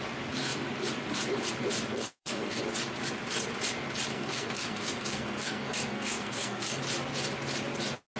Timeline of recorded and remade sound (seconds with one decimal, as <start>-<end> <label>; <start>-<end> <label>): 0.0-1.9 recorded; 1.9-2.6 remade; 2.6-4.1 recorded; 4.1-6.8 remade; 6.8-8.2 recorded